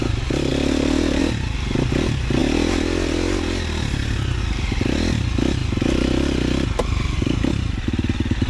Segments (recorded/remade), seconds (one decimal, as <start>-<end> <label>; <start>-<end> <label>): 0.0-8.5 recorded